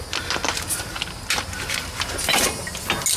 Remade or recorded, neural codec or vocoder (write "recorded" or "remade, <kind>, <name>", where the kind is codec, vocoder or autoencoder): recorded